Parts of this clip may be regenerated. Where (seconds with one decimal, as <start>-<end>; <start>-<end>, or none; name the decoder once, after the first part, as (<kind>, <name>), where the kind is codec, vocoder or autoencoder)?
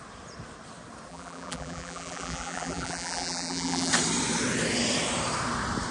1.1-3.9 (vocoder, BigVGAN v2)